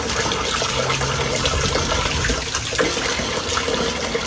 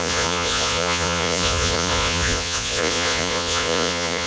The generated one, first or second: second